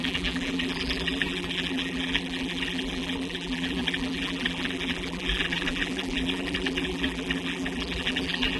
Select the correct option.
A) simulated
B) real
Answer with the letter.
A